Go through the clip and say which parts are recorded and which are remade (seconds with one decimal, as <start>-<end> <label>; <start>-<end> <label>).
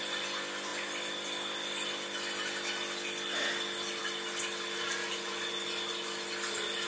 0.0-6.9 recorded